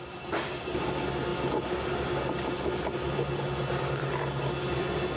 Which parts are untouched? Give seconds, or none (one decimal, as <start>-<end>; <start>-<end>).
0.0-5.2